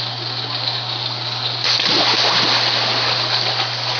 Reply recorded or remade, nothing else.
recorded